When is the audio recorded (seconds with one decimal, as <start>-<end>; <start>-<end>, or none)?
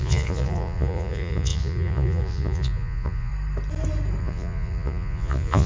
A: 3.3-4.2